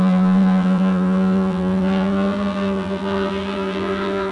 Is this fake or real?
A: fake